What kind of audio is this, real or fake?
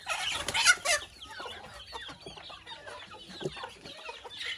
real